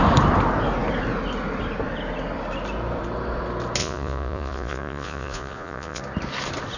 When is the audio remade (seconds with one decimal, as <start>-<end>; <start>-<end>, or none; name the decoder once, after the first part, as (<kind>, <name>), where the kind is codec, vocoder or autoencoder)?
3.8-6.0 (vocoder, Vocos)